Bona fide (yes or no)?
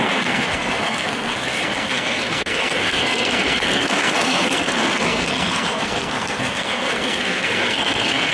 no